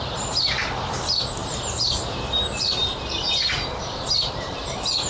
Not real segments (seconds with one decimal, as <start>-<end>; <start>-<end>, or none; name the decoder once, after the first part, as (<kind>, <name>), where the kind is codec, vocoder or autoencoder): 0.0-5.1 (vocoder, BigVGAN v2)